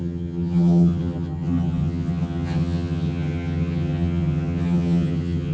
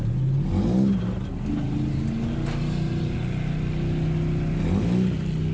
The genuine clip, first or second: second